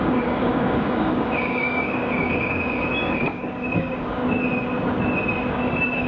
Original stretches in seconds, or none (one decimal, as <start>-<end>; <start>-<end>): 4.2-5.5